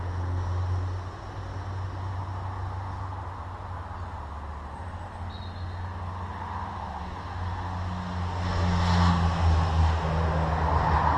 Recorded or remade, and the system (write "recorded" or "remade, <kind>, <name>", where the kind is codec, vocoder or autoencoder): recorded